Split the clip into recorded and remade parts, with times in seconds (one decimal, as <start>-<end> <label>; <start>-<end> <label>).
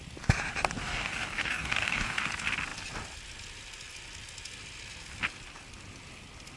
0.0-0.8 recorded; 0.8-2.2 remade; 2.2-6.6 recorded